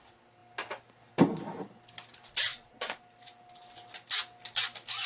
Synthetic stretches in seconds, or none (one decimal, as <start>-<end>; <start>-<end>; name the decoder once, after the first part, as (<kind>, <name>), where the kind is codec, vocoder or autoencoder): 2.5-3.0 (vocoder, Vocos)

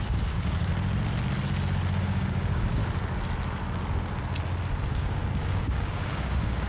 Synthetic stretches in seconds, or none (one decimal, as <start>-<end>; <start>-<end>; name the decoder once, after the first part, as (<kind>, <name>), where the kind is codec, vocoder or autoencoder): 0.0-0.7 (codec, DAC); 2.0-2.8; 4.9-6.7

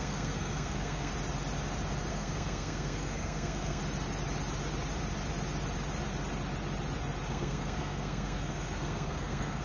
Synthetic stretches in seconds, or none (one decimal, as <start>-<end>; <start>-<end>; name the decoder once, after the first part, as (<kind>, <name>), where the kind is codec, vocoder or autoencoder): 0.0-1.1 (codec, SNAC); 2.1-3.8; 7.3-9.6